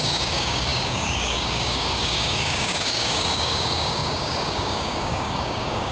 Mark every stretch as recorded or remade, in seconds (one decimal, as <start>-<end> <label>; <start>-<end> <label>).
0.0-5.9 remade